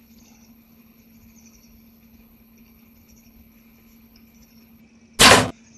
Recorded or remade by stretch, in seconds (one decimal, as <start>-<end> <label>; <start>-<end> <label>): 0.0-4.8 remade; 4.8-5.8 recorded